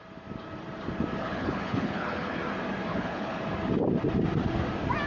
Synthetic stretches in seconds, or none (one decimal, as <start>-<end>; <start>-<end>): 1.2-2.4; 2.9-3.4